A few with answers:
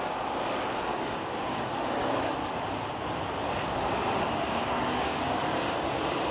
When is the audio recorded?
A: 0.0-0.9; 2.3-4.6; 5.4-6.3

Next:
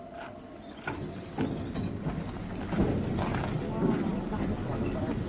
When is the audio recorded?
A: 0.0-2.2; 3.0-4.1

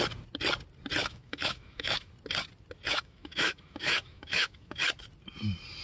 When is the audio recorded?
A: 0.0-1.0; 2.1-2.9; 4.8-5.8

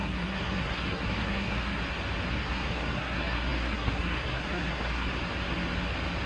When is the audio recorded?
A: 1.8-2.3; 5.1-6.3

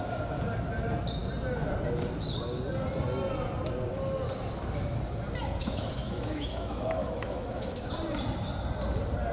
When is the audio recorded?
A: 0.0-5.6; 7.9-9.3